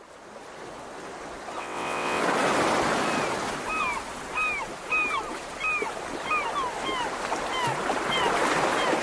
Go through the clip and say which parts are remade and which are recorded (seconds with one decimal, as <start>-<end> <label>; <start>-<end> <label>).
0.0-1.6 recorded; 1.6-2.2 remade; 2.2-9.0 recorded